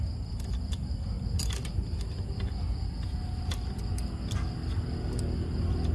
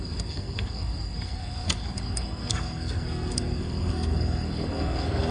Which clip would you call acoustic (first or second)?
first